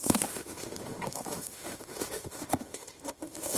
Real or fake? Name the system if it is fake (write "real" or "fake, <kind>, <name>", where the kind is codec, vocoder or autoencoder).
fake, autoencoder, DAC-VAE